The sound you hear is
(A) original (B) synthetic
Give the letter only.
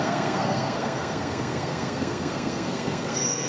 B